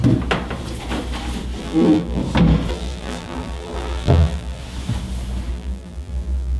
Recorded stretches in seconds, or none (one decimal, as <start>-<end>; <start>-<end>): 0.0-1.6; 2.2-2.7; 4.6-5.5